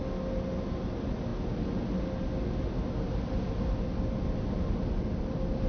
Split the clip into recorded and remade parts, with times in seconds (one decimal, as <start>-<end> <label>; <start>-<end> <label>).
0.0-5.7 recorded